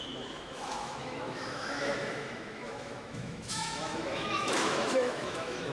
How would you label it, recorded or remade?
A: remade